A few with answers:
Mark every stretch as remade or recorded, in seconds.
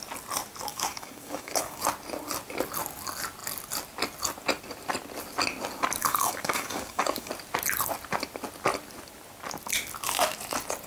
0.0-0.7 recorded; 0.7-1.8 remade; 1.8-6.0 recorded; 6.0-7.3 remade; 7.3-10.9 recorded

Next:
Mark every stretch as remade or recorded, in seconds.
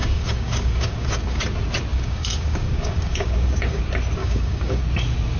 0.0-1.4 remade; 1.4-1.9 recorded; 1.9-3.8 remade; 3.8-4.2 recorded; 4.2-4.8 remade; 4.8-5.4 recorded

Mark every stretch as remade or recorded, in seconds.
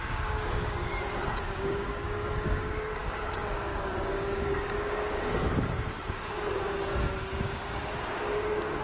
0.0-0.9 remade; 0.9-1.6 recorded; 1.6-8.8 remade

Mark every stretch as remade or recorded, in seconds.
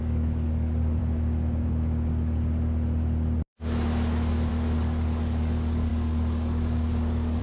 0.0-1.0 remade; 1.0-4.5 recorded; 4.5-7.4 remade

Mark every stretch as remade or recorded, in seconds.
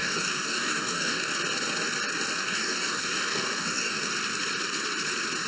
0.0-1.3 remade; 1.3-2.4 recorded; 2.4-4.1 remade; 4.1-5.5 recorded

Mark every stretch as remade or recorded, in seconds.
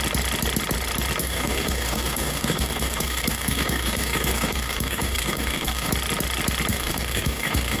0.0-1.2 recorded; 1.2-5.9 remade; 5.9-6.7 recorded; 6.7-7.8 remade